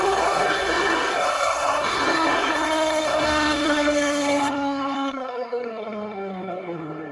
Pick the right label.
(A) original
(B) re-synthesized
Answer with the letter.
B